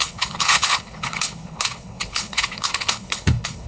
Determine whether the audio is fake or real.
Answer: fake